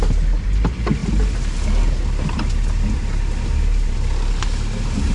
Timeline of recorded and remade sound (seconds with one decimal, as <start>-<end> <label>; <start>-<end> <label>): 0.0-5.1 recorded